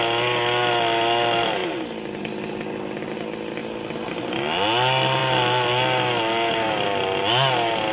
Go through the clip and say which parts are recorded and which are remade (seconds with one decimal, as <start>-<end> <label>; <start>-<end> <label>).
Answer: 0.0-7.9 recorded